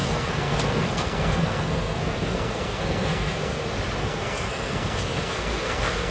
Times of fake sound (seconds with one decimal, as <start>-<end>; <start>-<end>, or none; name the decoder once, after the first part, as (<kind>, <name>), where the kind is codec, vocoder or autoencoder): 0.0-3.6 (codec, SNAC); 4.0-6.1